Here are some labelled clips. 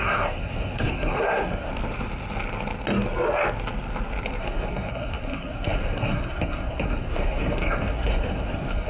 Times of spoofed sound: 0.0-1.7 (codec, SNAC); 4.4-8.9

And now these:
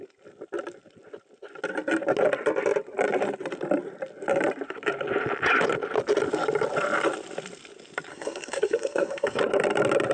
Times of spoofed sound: 8.1-9.4 (codec, SNAC)